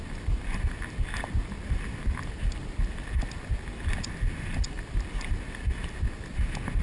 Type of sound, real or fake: real